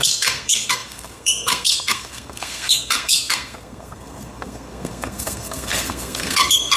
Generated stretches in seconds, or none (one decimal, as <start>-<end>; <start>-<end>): 0.0-6.8